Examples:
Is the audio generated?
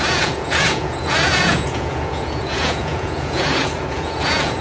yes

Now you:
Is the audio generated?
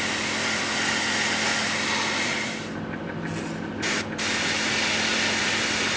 no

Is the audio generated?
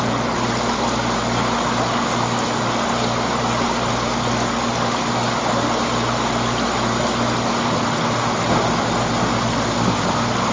no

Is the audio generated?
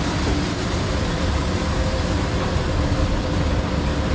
no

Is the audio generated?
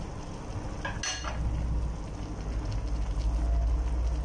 no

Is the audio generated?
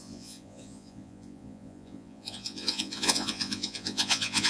yes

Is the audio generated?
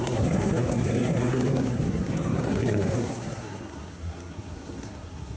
yes